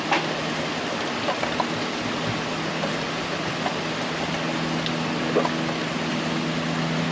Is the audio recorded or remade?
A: recorded